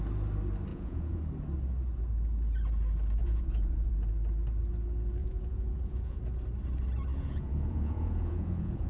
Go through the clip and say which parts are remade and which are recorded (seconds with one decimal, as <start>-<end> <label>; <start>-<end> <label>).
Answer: 0.0-0.7 recorded; 0.7-1.2 remade; 1.2-3.2 recorded; 3.2-3.9 remade; 3.9-5.2 recorded; 5.2-6.2 remade; 6.2-7.1 recorded; 7.1-8.9 remade